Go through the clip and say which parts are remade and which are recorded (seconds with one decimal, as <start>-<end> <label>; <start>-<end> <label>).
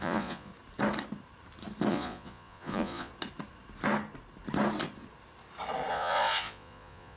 0.0-0.5 remade; 0.5-1.9 recorded; 1.9-3.1 remade; 3.1-5.9 recorded; 5.9-7.2 remade